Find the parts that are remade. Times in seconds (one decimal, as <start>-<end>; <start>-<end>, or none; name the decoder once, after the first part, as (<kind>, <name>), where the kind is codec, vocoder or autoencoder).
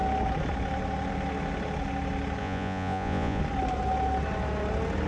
2.4-3.4 (vocoder, Vocos)